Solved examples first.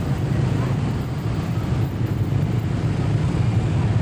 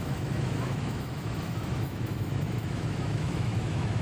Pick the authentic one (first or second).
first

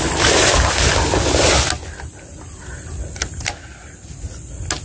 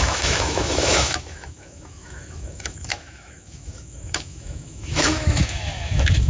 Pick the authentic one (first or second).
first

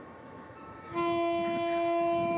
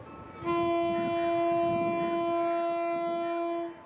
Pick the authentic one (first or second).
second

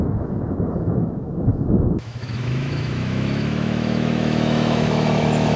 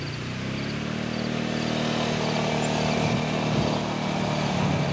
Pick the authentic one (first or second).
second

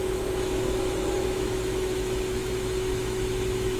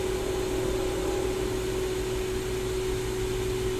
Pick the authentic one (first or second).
second